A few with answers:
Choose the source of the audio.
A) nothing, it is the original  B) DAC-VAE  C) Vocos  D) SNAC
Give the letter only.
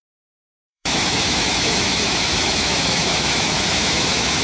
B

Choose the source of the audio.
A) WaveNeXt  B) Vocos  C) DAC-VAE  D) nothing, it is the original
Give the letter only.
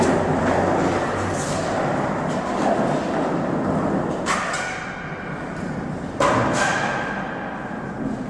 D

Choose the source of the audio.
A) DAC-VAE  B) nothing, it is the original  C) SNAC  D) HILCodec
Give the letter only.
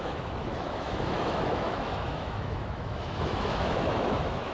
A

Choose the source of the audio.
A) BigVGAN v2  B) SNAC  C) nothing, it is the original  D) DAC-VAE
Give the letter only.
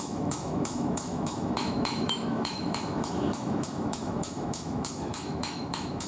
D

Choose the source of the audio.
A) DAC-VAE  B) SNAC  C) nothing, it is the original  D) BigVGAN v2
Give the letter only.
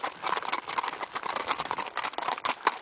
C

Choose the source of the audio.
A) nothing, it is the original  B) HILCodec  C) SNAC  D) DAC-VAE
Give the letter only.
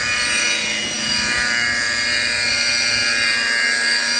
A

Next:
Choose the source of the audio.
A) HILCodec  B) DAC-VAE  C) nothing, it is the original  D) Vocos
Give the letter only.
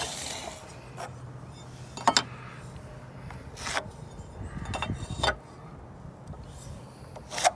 C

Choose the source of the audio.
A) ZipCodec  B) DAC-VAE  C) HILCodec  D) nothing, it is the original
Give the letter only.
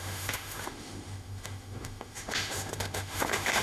B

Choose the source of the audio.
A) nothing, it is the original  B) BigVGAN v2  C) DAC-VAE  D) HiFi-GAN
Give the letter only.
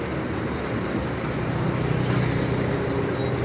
A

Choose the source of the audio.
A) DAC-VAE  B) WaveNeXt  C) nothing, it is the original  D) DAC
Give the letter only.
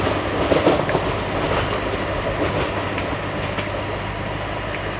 C